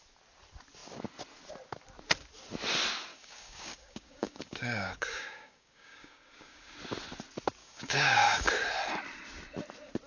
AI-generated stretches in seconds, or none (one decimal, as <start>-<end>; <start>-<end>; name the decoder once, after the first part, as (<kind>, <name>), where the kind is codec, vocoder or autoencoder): 3.1-6.7 (codec, DAC); 7.6-8.5